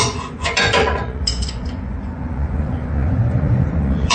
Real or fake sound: fake